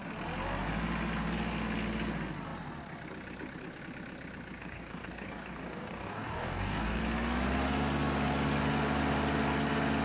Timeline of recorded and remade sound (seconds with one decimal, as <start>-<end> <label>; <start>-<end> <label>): 0.0-4.6 recorded; 4.6-7.0 remade; 7.0-10.0 recorded